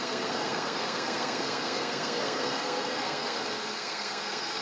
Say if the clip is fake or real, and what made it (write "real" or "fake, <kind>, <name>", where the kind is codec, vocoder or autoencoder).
fake, codec, SNAC